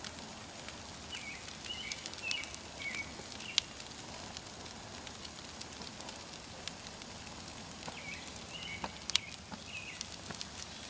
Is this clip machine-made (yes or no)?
no